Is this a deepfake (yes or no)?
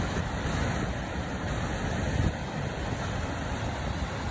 no